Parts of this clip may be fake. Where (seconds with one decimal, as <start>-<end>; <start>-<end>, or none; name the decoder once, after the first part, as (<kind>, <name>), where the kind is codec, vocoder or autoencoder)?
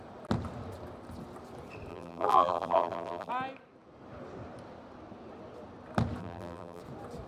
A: 1.9-3.3 (vocoder, BigVGAN v2); 6.2-6.8